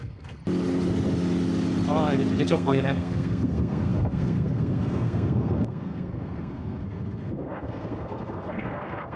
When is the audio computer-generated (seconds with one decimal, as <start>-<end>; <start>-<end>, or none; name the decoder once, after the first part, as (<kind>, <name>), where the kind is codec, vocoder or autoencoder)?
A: 0.0-0.4 (codec, SNAC); 2.4-9.2